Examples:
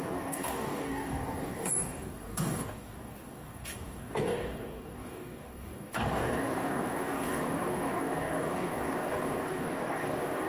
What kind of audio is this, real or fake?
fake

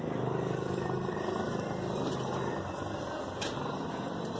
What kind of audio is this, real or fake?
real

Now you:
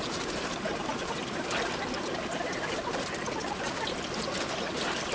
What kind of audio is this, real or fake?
real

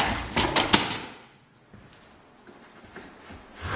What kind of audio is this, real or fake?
real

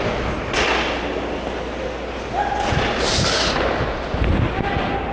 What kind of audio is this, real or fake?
real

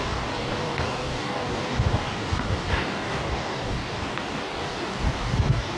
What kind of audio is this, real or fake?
fake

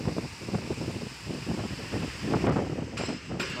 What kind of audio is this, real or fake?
real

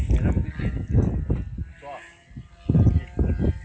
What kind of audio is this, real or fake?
real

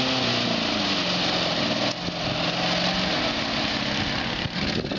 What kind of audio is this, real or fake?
real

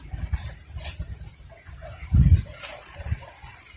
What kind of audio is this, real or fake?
real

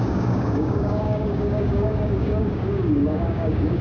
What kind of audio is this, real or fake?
fake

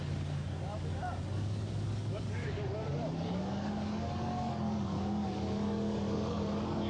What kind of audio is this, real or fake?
fake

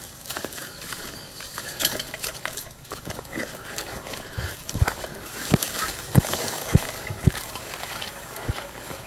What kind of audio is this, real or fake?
fake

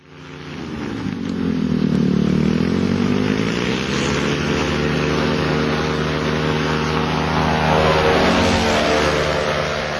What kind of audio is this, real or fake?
real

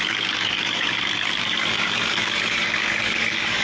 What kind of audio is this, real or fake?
fake